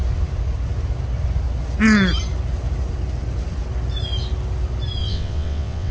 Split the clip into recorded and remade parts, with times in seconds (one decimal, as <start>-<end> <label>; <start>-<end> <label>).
0.0-5.0 recorded; 5.0-5.9 remade